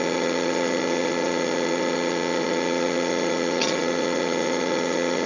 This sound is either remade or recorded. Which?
remade